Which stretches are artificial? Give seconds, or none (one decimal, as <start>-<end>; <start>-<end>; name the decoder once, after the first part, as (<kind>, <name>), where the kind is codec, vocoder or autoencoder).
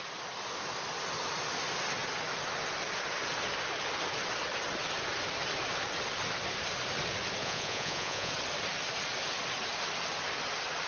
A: 7.4-8.3 (vocoder, Vocos)